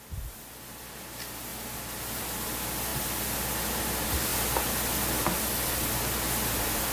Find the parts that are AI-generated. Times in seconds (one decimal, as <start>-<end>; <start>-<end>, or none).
none